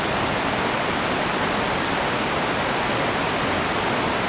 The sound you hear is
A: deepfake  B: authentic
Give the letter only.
B